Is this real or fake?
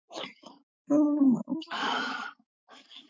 fake